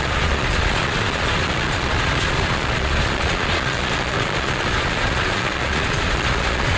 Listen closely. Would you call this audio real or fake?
fake